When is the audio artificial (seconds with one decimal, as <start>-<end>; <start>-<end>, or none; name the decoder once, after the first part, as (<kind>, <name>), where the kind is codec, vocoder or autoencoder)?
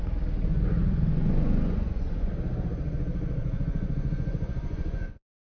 0.5-2.3 (vocoder, Vocos); 3.4-5.6